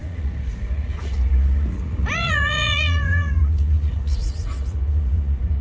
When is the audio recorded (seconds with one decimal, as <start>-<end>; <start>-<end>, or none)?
none